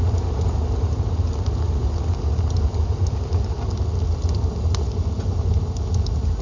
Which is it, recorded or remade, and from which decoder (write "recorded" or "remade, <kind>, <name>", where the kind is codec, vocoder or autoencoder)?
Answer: recorded